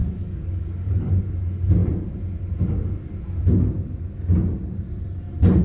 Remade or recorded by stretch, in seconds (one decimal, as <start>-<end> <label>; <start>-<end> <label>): 0.0-1.1 remade; 1.1-5.6 recorded